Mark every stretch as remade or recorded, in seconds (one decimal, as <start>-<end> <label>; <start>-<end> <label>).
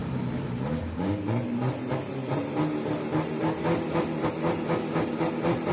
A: 0.0-5.7 recorded